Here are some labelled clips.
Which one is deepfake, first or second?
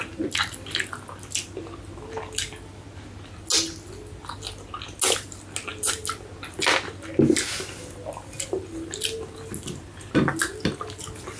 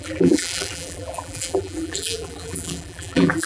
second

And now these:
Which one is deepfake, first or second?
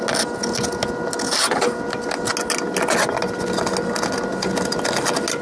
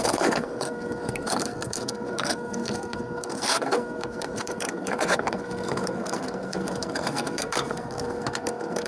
second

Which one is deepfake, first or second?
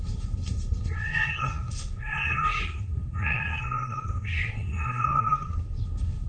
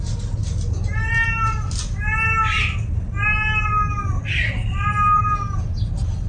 first